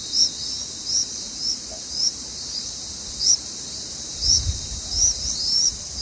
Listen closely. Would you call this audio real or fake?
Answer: fake